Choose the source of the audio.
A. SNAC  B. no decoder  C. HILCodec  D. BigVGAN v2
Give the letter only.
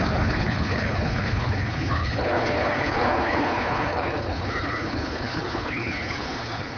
C